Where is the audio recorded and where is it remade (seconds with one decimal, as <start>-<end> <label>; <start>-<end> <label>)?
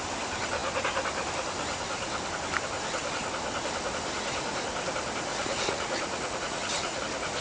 0.0-5.3 recorded; 5.3-7.0 remade; 7.0-7.4 recorded